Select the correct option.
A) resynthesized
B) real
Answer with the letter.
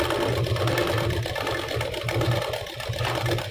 B